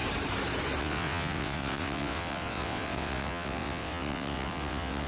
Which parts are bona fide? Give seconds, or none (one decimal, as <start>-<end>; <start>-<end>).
0.0-0.8